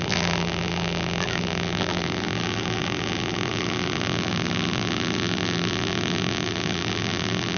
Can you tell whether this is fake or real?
fake